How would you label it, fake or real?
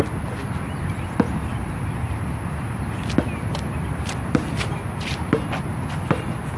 real